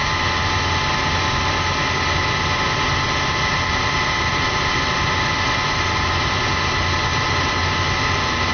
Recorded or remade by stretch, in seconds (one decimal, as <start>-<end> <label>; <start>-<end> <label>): 0.0-8.5 recorded

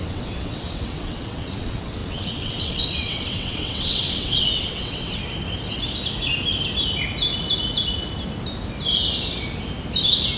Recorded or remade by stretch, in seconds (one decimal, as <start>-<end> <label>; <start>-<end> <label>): 0.0-5.2 remade; 5.2-10.4 recorded

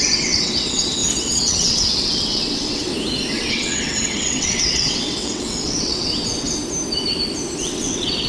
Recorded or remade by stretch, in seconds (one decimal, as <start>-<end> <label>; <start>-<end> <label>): 0.0-2.9 remade; 2.9-3.5 recorded; 3.5-6.6 remade; 6.6-7.6 recorded; 7.6-8.3 remade

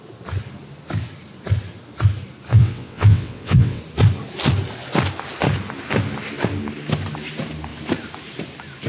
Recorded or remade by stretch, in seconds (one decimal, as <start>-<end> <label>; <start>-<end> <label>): 0.0-2.5 recorded; 2.5-3.8 remade; 3.8-8.9 recorded